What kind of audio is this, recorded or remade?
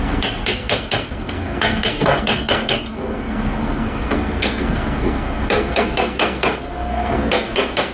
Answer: remade